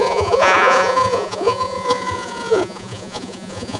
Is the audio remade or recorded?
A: remade